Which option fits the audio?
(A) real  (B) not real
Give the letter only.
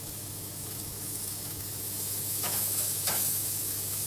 B